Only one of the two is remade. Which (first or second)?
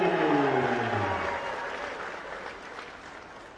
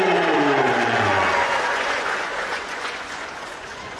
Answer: second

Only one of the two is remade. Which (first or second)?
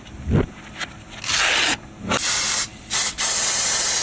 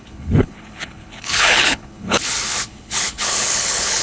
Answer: second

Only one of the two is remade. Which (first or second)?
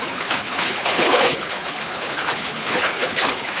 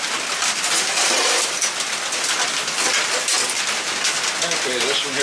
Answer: first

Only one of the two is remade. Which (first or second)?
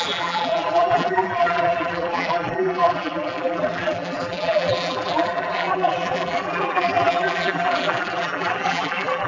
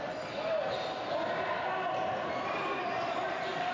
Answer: first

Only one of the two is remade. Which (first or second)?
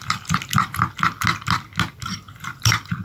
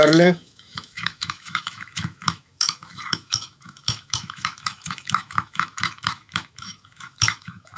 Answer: second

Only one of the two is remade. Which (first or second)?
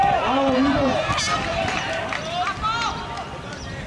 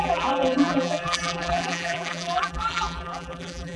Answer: second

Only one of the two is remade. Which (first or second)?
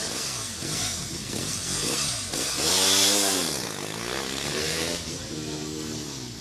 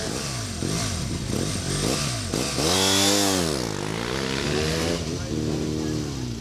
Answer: first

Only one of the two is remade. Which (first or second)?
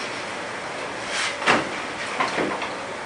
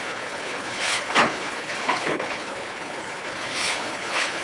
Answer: second